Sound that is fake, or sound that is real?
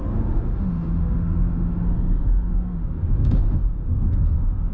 fake